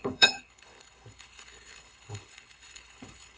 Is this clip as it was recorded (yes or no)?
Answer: no